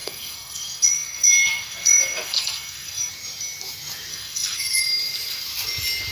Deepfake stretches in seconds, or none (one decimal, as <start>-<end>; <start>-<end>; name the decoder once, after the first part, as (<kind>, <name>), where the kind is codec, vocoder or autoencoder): 0.0-3.1 (codec, SNAC); 4.1-4.8

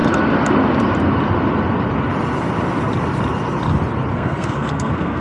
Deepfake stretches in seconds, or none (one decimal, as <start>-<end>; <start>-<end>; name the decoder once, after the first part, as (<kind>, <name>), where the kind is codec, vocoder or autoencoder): 4.1-5.2 (codec, SNAC)

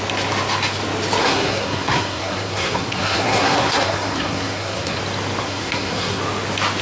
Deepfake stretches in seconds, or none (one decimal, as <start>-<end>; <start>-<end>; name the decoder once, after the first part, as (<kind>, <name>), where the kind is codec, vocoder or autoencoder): 1.2-5.0 (codec, SNAC); 5.4-6.2

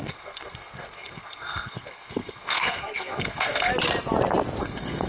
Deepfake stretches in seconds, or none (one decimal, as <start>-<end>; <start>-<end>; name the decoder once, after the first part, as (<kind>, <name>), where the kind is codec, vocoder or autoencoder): 0.0-3.7 (codec, SNAC); 4.6-5.1

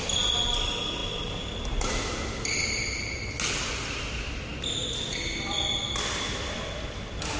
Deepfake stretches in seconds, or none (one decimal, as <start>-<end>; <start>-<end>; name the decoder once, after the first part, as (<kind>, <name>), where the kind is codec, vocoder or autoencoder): none

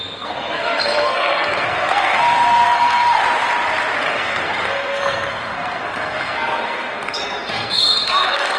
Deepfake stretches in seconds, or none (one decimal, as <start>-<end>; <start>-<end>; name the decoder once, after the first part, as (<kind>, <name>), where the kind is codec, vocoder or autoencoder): 0.0-3.2 (codec, SNAC); 4.0-8.6